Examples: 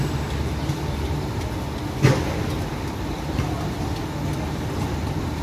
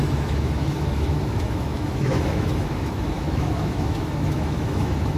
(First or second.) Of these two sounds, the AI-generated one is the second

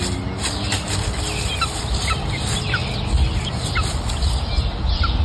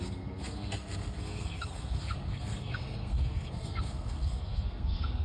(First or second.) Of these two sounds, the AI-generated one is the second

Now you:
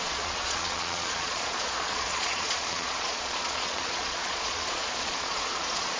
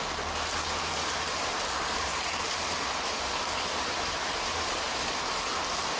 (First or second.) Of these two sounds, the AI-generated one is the first